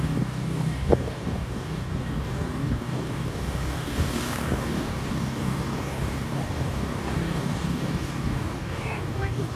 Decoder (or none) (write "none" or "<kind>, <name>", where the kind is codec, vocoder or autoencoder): codec, DAC